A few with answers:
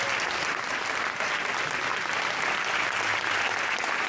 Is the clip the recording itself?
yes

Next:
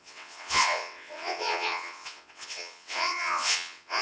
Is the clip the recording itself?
no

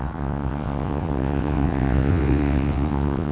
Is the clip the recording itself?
no